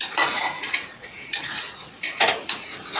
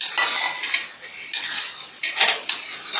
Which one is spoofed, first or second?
first